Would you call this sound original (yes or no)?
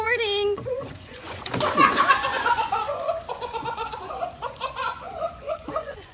no